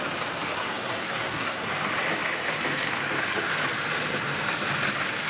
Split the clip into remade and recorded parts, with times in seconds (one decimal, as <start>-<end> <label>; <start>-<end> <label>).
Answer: 0.0-0.6 recorded; 0.6-1.7 remade; 1.7-5.3 recorded